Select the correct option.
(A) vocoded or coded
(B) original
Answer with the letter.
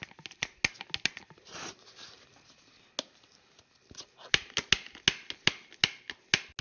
B